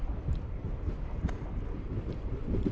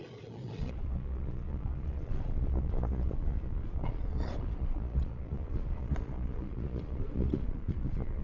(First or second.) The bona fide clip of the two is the first